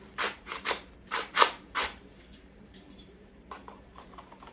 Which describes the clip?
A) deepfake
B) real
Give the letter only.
A